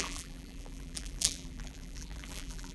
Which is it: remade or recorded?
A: remade